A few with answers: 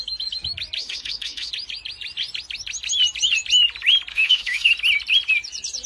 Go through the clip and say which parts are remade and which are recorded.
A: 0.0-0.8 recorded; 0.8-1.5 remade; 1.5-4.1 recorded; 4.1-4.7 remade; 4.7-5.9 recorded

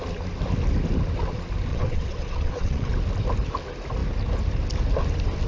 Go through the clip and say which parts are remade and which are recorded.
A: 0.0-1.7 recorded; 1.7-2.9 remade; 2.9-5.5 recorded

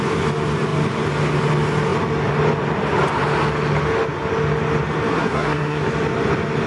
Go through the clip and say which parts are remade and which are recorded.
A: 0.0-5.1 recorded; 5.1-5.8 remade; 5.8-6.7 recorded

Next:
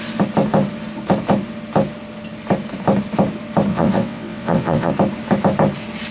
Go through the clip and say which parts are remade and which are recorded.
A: 0.0-3.7 recorded; 3.7-4.9 remade; 4.9-6.1 recorded

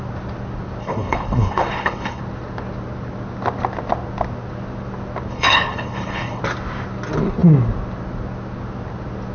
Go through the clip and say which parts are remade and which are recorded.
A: 0.0-0.8 recorded; 0.8-2.2 remade; 2.2-5.3 recorded; 5.3-6.4 remade; 6.4-9.3 recorded

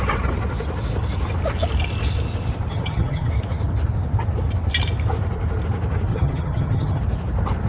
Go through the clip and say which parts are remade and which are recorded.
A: 0.0-2.7 recorded; 2.7-3.3 remade; 3.3-6.1 recorded; 6.1-7.0 remade; 7.0-7.7 recorded

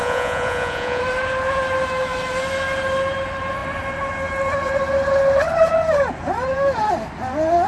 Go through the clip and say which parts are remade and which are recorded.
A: 0.0-1.0 remade; 1.0-7.7 recorded

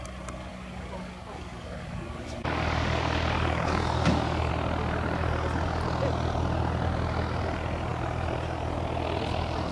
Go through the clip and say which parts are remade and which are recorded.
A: 0.0-0.5 recorded; 0.5-4.5 remade; 4.5-9.7 recorded